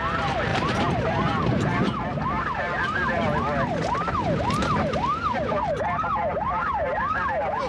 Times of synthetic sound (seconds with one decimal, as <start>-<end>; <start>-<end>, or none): 0.5-2.0